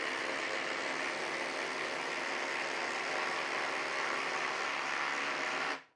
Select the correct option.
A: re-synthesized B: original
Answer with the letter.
B